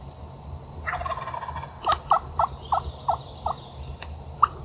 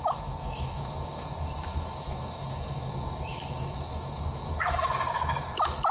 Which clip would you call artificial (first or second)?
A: second